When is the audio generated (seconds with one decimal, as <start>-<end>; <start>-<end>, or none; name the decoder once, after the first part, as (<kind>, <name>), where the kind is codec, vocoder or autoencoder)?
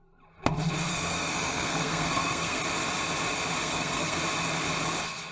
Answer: 0.9-2.6 (codec, SNAC); 3.6-4.2